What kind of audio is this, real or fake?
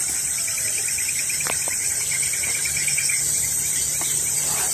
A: real